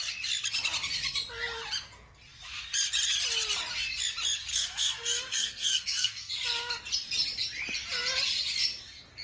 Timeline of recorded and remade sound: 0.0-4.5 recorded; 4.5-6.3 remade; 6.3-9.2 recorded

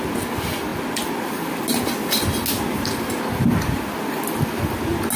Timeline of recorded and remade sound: 0.0-5.2 recorded